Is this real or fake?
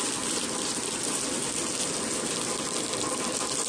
real